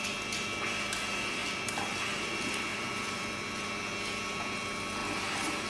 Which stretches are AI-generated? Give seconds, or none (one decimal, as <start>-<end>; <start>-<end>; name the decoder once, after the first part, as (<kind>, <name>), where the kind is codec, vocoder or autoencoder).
1.4-2.3 (vocoder, BigVGAN v2); 2.7-3.3; 5.0-5.7